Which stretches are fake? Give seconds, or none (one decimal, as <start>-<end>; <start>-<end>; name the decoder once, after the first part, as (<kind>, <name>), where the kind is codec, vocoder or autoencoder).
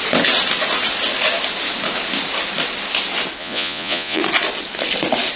3.4-4.2 (vocoder, Vocos)